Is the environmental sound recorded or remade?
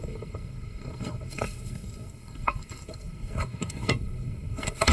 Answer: remade